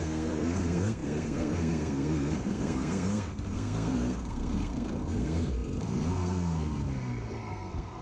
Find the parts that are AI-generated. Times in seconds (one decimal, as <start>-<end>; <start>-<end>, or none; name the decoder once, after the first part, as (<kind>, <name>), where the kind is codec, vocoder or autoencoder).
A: 0.0-8.0 (codec, SNAC)